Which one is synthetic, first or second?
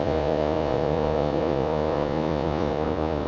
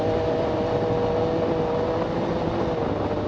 first